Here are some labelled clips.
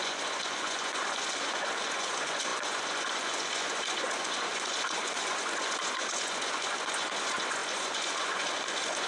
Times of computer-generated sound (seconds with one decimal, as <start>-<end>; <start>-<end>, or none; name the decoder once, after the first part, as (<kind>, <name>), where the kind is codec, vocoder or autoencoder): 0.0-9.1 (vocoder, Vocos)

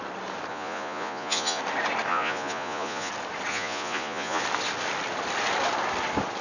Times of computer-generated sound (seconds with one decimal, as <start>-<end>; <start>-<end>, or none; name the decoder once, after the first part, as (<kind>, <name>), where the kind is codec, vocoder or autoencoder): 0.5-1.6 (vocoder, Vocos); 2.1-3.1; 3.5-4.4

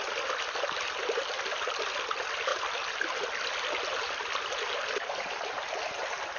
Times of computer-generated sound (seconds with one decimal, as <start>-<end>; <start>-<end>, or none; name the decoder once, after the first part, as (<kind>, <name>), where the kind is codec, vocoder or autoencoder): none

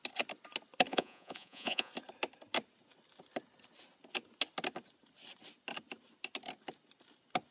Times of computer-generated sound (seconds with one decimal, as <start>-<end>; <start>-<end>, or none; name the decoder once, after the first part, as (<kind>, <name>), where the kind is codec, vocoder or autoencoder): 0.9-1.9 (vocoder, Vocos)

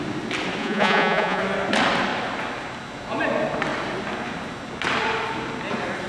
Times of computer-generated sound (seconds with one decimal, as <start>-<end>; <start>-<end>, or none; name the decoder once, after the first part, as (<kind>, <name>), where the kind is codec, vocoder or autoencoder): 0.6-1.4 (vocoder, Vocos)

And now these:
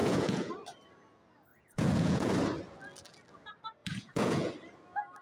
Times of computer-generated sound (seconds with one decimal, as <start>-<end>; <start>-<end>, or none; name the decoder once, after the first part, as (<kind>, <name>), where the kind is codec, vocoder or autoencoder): 0.0-0.5 (vocoder, Vocos); 1.5-2.3; 3.8-4.5

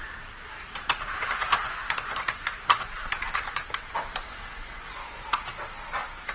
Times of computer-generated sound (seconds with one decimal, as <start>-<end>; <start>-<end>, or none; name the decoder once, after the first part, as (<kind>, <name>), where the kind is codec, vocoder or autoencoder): 1.3-3.1 (vocoder, Vocos); 4.3-5.3